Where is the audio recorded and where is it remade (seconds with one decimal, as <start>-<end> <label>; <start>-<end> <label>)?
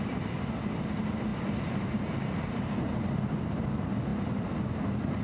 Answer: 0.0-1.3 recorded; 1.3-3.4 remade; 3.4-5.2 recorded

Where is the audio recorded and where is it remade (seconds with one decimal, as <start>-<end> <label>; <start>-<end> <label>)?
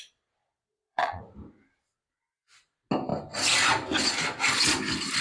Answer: 0.0-0.4 recorded; 0.4-1.2 remade; 1.2-5.2 recorded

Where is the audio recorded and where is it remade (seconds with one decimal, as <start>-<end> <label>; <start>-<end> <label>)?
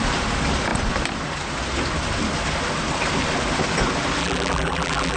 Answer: 0.0-4.2 recorded; 4.2-5.2 remade